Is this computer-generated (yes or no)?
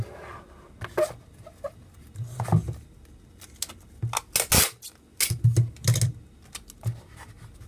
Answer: no